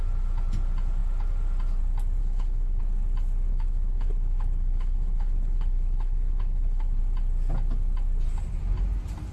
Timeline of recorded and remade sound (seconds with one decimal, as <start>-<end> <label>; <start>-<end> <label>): 0.0-2.2 recorded; 2.2-2.8 remade; 2.8-3.5 recorded; 3.5-7.0 remade; 7.0-9.3 recorded